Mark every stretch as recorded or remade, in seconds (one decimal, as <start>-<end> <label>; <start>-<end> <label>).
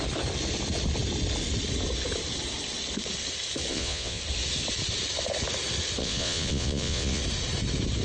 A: 0.0-3.7 recorded; 3.7-4.2 remade; 4.2-6.0 recorded; 6.0-7.2 remade; 7.2-8.0 recorded